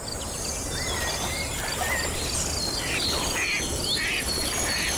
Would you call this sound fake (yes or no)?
no